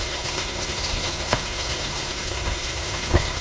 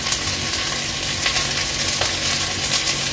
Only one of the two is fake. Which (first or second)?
first